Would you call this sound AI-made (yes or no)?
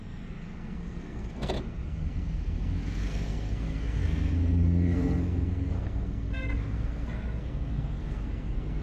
yes